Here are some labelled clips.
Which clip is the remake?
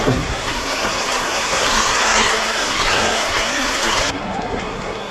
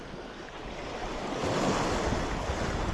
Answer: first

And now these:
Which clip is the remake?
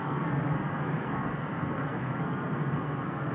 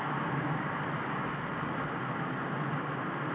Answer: first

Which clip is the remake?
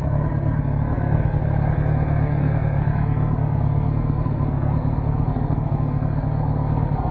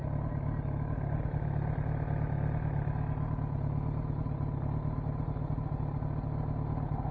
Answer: first